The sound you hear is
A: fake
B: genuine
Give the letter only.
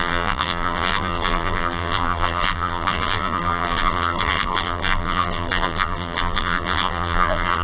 A